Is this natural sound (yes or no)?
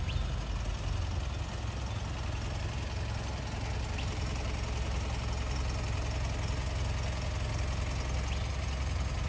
yes